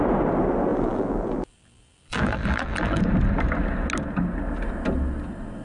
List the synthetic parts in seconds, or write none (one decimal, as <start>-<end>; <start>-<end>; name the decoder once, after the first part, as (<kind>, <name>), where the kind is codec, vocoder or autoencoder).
0.7-3.0 (vocoder, BigVGAN v2)